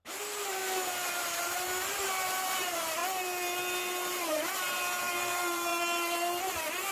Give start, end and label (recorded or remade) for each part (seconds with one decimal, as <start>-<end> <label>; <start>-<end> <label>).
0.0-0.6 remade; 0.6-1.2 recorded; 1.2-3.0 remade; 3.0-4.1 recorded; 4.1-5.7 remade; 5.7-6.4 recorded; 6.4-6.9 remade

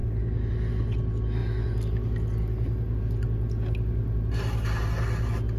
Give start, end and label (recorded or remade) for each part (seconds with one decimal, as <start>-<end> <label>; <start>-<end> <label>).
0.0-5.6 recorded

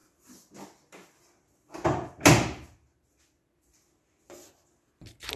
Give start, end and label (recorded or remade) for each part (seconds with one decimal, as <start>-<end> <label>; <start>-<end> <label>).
0.0-5.4 recorded